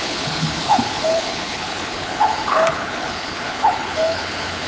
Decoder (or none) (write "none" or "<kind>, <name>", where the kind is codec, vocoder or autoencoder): codec, HILCodec